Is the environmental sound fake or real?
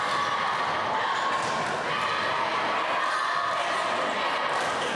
real